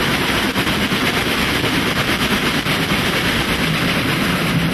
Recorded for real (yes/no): yes